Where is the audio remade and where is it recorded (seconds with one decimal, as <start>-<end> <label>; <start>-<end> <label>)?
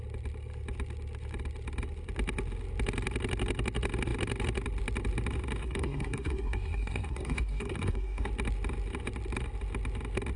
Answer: 0.0-5.6 recorded; 5.6-8.3 remade; 8.3-10.4 recorded